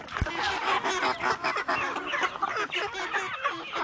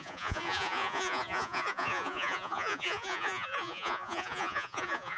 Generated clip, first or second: second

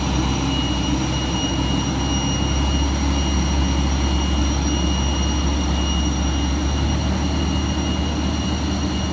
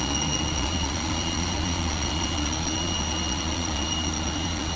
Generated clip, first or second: second